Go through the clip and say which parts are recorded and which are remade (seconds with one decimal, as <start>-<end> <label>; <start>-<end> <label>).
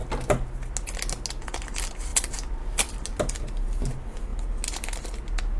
0.0-5.6 recorded